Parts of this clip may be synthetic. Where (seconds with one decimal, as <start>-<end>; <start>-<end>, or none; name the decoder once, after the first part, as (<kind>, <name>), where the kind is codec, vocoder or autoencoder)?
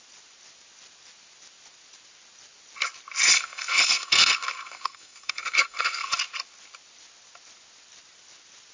3.3-6.1 (codec, SNAC)